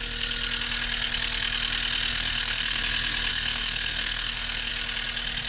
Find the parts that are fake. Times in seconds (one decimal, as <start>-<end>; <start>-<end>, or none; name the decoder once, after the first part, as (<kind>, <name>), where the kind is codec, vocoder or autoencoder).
2.1-2.8 (codec, SNAC); 3.3-4.7